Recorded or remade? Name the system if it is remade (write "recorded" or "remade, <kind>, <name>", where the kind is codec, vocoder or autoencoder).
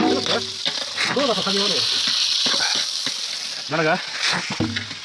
recorded